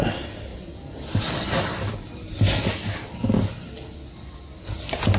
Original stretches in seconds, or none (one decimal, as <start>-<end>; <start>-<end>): 0.0-5.2